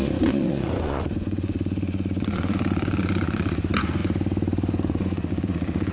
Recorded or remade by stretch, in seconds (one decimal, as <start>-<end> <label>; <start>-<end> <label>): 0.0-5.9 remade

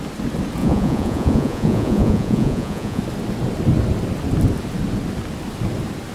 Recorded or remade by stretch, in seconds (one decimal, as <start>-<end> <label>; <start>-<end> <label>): 0.0-0.6 recorded; 0.6-3.0 remade; 3.0-6.1 recorded

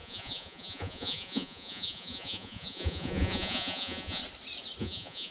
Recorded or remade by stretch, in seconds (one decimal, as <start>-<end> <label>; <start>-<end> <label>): 0.0-4.2 remade; 4.2-4.8 recorded; 4.8-5.3 remade

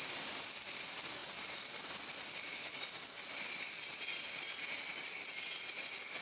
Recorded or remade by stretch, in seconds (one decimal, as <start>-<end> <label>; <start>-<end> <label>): 0.0-6.2 recorded